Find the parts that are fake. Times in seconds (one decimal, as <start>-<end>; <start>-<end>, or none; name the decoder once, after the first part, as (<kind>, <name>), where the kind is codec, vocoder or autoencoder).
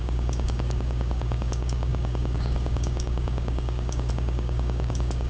0.0-5.3 (codec, DAC)